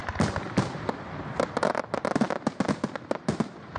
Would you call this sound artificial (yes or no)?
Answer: no